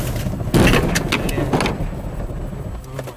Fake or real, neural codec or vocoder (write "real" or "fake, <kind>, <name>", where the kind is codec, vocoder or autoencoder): real